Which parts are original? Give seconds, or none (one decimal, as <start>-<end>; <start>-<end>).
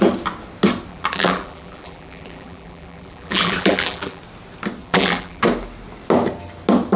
0.0-0.9; 4.2-4.8; 5.4-7.0